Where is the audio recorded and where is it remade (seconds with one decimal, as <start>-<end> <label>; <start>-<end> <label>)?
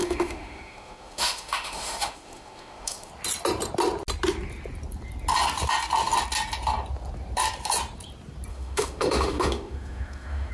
0.0-3.1 remade; 3.1-8.5 recorded; 8.5-10.5 remade